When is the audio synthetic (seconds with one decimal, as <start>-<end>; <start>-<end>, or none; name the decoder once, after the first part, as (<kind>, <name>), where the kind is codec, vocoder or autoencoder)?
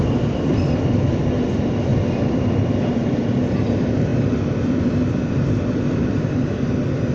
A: none